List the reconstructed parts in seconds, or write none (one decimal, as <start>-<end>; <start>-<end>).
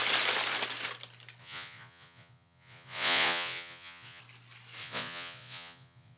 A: 1.4-4.2; 4.8-6.2